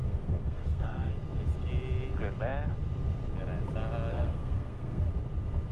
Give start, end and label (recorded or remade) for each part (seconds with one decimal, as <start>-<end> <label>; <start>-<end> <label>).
0.0-1.1 remade; 1.1-4.1 recorded; 4.1-5.1 remade; 5.1-5.7 recorded